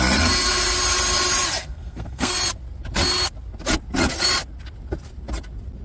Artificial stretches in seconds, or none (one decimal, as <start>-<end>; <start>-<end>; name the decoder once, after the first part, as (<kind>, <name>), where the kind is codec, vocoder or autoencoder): 1.6-2.3 (codec, SNAC)